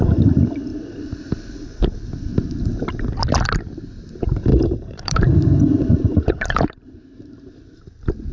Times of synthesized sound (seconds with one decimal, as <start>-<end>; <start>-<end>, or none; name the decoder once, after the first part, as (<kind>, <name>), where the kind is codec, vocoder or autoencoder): 0.7-1.5 (vocoder, BigVGAN v2); 2.3-2.9; 4.5-7.8